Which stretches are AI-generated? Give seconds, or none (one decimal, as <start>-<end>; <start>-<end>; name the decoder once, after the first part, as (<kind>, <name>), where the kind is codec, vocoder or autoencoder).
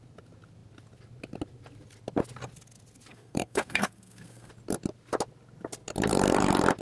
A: 3.1-4.5 (codec, SNAC)